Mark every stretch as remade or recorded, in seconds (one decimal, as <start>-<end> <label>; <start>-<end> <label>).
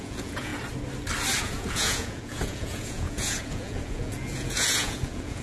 0.0-0.5 remade; 0.5-1.4 recorded; 1.4-5.4 remade